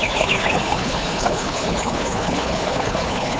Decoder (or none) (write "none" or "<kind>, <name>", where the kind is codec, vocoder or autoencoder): codec, HILCodec